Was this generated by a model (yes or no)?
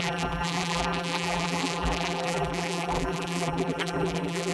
yes